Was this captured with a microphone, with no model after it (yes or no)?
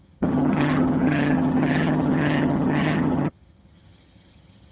no